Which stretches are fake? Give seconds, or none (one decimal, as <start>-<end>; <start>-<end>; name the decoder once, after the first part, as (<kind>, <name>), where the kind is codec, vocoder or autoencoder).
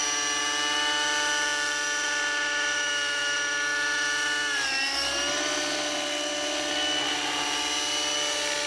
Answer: none